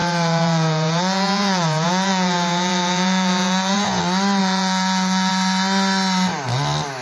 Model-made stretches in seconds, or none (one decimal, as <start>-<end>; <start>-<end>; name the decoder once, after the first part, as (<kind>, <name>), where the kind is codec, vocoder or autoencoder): 0.0-4.0 (vocoder, Vocos); 4.4-5.3